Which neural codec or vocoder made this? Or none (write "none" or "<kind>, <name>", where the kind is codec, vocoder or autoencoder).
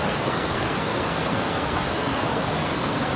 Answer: codec, SNAC